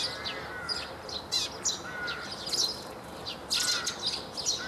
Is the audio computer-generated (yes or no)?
no